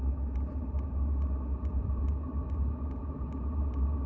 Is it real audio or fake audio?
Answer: fake